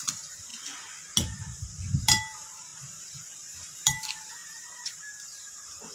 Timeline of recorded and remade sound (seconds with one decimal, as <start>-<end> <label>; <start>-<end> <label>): 0.0-0.5 remade; 0.5-2.0 recorded; 2.0-5.9 remade